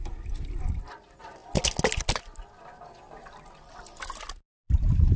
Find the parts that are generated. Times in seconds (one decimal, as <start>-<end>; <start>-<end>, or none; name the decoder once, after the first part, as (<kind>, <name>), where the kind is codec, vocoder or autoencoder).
none